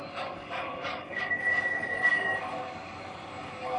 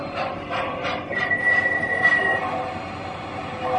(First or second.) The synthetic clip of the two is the first